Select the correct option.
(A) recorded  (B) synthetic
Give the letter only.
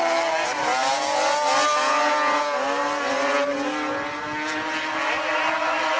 A